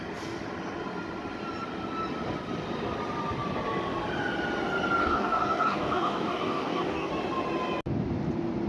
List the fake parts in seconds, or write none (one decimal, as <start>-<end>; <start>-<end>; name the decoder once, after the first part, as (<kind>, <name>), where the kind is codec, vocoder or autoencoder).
5.0-7.1 (codec, DAC)